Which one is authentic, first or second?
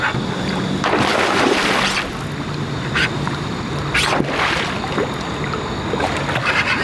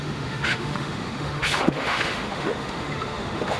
first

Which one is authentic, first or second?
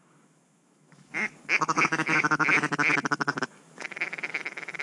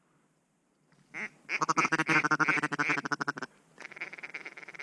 second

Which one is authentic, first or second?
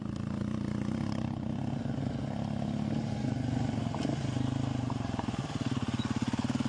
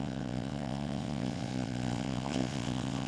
first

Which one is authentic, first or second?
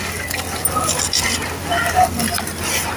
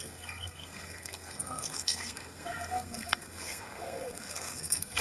first